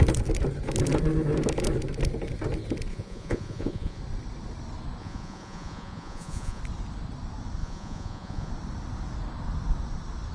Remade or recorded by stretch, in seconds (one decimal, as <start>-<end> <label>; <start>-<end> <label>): 0.0-2.9 recorded; 2.9-4.0 remade; 4.0-5.0 recorded; 5.0-6.6 remade; 6.6-7.6 recorded; 7.6-8.5 remade; 8.5-10.3 recorded